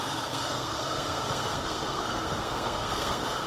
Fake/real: fake